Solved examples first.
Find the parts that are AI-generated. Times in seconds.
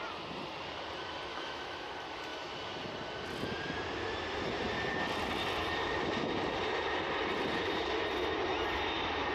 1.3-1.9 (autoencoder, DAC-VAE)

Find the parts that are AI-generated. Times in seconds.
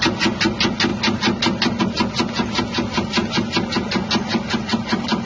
none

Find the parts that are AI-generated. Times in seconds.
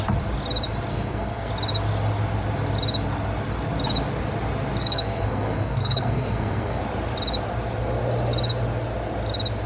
0.9-1.5 (codec, SNAC); 4.8-6.8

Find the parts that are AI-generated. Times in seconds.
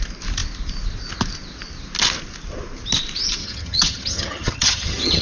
3.4-5.2 (vocoder, HiFi-GAN)